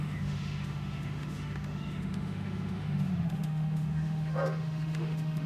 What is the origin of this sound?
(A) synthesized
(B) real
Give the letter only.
A